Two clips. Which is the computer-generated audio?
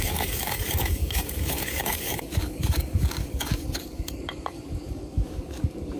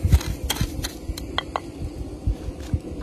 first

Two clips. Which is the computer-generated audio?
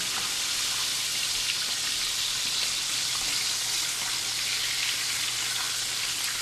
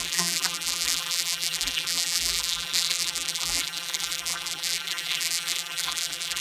second